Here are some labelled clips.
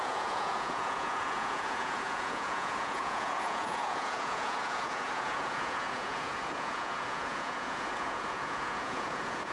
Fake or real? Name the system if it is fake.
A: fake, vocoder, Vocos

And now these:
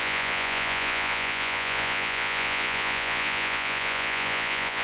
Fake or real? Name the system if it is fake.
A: fake, vocoder, Vocos